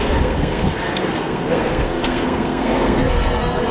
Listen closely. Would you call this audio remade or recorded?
remade